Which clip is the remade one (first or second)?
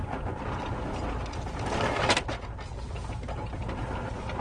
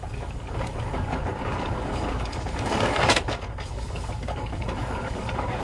second